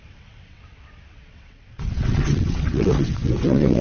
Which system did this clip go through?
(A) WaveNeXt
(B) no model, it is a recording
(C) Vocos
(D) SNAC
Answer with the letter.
A